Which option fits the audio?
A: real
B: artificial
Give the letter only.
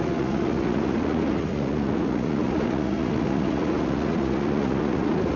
B